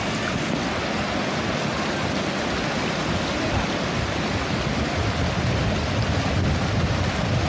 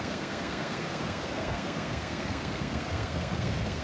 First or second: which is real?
first